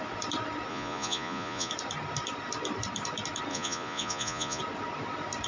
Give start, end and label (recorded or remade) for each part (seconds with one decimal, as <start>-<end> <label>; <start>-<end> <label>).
0.0-0.7 recorded; 0.7-1.7 remade; 1.7-3.5 recorded; 3.5-4.6 remade; 4.6-5.5 recorded